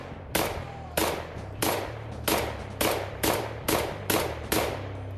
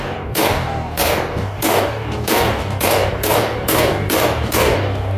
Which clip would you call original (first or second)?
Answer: first